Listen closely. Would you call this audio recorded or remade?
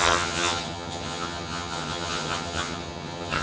remade